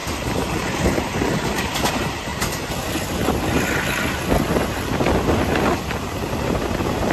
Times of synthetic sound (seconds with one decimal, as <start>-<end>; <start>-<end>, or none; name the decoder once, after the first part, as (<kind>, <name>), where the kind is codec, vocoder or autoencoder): 1.9-2.3 (vocoder, BigVGAN v2); 6.0-7.1